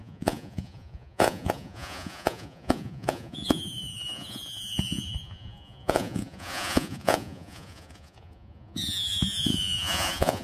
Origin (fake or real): fake